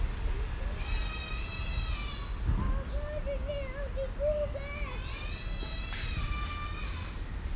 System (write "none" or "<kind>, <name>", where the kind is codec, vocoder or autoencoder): none